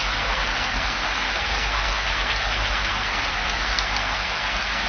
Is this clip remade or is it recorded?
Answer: remade